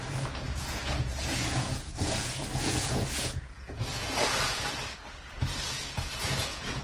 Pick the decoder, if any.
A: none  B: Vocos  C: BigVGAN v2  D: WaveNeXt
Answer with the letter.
B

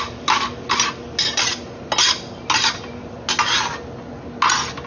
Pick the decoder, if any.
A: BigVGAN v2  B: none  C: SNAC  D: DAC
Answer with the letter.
B